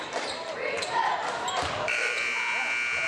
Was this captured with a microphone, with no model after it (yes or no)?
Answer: yes